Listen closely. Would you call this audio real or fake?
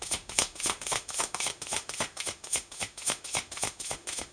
fake